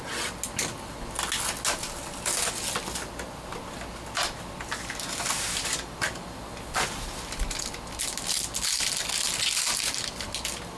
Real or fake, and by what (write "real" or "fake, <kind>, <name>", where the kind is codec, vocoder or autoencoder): real